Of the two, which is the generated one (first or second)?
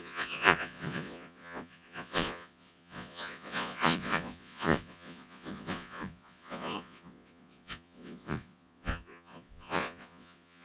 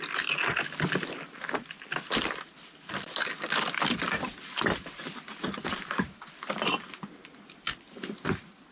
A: first